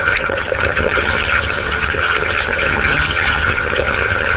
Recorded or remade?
remade